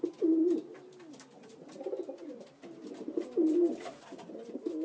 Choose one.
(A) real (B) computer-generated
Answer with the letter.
A